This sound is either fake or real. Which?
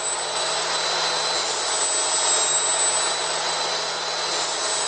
real